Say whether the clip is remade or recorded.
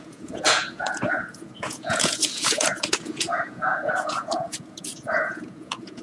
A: remade